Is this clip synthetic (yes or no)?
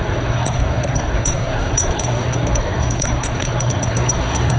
yes